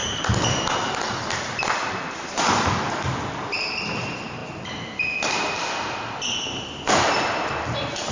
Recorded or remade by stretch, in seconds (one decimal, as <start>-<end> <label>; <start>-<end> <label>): 0.0-8.1 recorded